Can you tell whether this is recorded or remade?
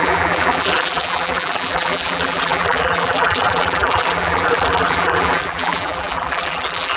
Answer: remade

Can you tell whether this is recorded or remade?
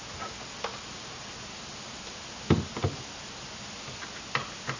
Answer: recorded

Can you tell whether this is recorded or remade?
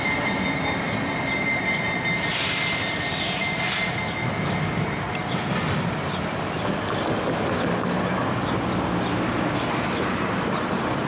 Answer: recorded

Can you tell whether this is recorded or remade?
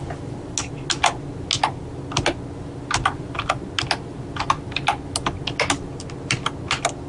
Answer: recorded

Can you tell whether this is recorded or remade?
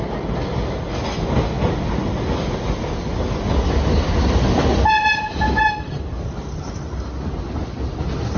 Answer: recorded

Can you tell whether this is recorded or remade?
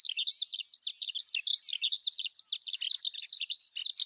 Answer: recorded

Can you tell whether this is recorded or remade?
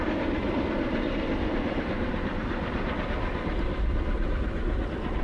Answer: recorded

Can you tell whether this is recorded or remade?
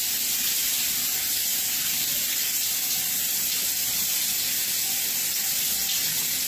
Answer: recorded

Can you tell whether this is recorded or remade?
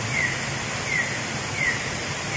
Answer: recorded